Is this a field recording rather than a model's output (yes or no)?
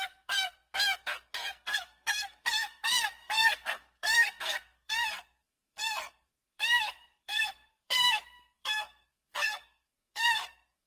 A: no